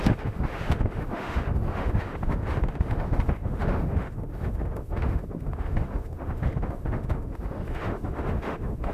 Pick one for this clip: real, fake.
fake